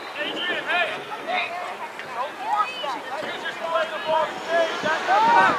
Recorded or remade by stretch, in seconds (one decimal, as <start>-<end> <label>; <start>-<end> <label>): 0.0-0.9 recorded; 0.9-1.5 remade; 1.5-5.6 recorded